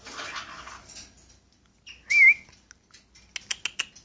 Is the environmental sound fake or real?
real